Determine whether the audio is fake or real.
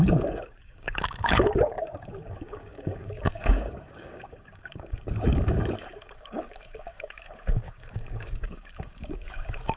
fake